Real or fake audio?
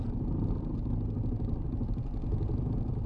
real